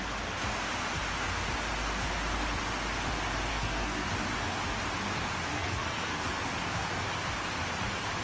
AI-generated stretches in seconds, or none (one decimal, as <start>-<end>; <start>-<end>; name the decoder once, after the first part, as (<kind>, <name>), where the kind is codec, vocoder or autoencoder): 3.5-4.1 (codec, SNAC); 5.5-6.4